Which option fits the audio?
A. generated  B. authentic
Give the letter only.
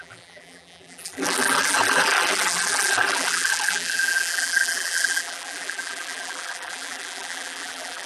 A